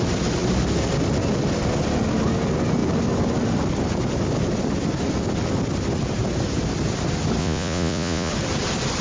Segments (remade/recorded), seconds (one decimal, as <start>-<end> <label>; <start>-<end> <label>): 0.0-7.4 recorded; 7.4-8.3 remade; 8.3-9.0 recorded